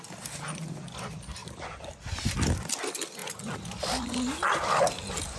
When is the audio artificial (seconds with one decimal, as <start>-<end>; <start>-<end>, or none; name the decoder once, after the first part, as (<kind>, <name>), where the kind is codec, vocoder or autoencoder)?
1.4-2.1 (vocoder, BigVGAN v2)